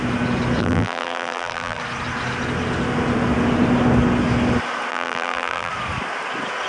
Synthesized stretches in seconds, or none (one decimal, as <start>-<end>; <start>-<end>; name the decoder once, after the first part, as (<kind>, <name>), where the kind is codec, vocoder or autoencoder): 0.6-1.8 (vocoder, BigVGAN v2); 4.9-5.7